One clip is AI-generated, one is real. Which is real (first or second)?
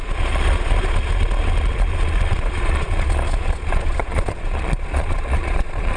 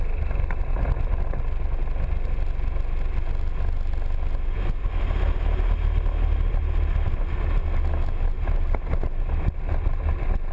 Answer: second